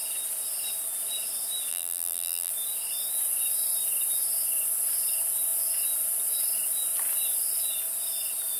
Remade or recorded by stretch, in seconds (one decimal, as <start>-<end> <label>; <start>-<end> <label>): 0.0-1.7 recorded; 1.7-2.5 remade; 2.5-8.6 recorded